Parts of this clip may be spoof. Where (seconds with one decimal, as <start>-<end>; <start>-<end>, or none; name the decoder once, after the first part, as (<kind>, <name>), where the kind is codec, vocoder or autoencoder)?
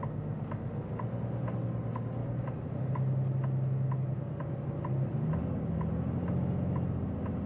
none